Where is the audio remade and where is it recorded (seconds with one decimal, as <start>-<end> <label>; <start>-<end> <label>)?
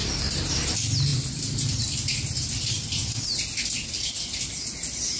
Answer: 0.0-5.2 recorded